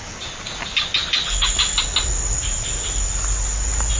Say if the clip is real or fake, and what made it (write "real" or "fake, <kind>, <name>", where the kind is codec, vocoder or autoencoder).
real